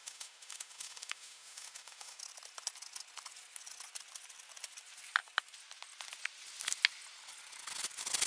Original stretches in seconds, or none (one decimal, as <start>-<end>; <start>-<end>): 2.2-8.3